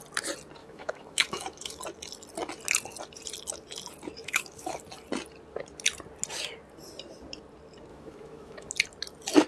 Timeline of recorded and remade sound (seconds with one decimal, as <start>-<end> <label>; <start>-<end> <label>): 0.0-0.6 recorded; 0.6-1.8 remade; 1.8-4.2 recorded; 4.2-4.8 remade; 4.8-7.9 recorded; 7.9-8.7 remade; 8.7-9.5 recorded